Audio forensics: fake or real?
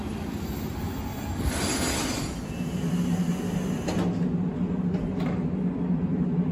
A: real